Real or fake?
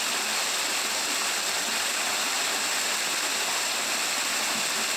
real